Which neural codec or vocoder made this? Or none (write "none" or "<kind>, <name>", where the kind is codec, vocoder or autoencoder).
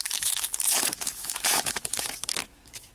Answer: autoencoder, DAC-VAE